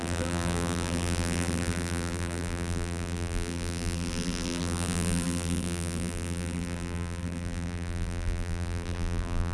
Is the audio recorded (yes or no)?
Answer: no